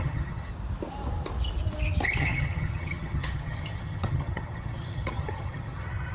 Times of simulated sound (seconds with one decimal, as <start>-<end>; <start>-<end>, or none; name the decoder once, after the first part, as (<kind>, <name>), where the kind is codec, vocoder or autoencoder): 0.0-0.5 (vocoder, HiFi-GAN); 2.2-6.1